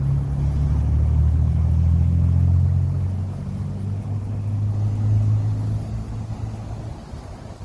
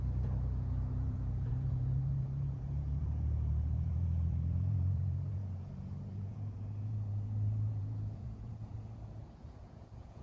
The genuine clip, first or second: first